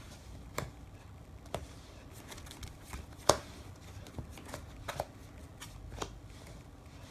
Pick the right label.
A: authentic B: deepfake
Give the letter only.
A